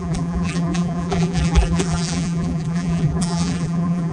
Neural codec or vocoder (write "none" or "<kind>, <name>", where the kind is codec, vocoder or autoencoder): vocoder, BigVGAN v2